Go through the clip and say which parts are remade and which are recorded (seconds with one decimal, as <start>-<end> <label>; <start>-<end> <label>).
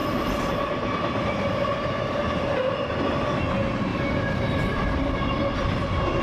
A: 0.0-2.9 remade; 2.9-3.9 recorded; 3.9-5.3 remade; 5.3-6.2 recorded